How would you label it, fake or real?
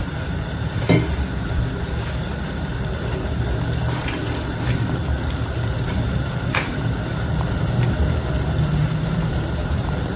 fake